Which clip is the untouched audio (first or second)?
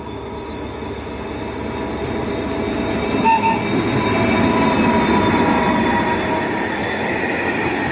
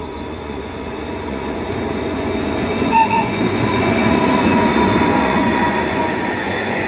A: first